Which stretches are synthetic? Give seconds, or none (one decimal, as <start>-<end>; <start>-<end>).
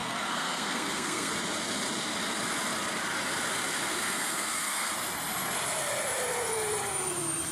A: 0.0-1.3; 3.9-4.9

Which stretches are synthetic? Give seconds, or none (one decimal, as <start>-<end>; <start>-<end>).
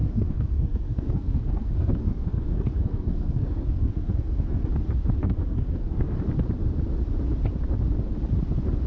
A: 0.0-4.7; 5.2-6.2